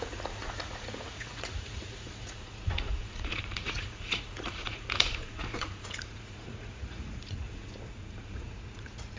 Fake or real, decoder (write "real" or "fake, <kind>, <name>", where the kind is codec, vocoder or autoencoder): fake, vocoder, Vocos